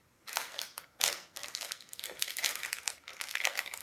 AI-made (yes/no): yes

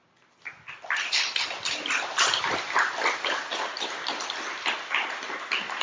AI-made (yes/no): no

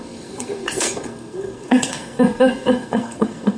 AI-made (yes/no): yes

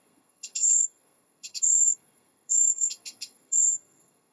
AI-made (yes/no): yes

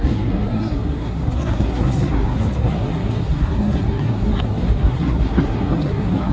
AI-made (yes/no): yes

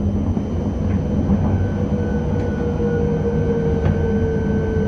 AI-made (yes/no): no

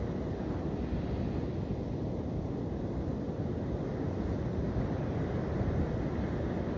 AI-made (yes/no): no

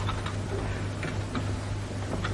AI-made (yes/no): no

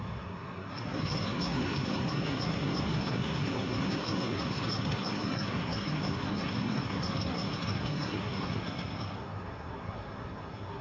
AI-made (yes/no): yes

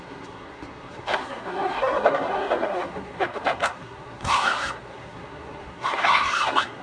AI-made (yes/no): yes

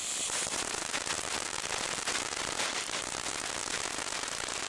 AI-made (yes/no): no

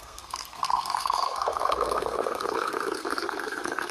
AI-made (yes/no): yes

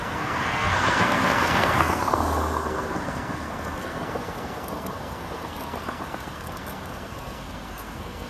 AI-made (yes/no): yes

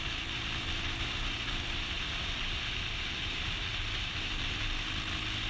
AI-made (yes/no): no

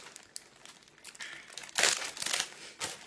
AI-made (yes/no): no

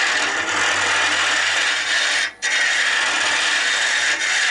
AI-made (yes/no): no